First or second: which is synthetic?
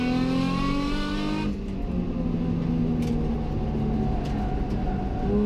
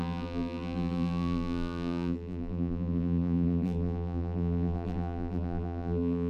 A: second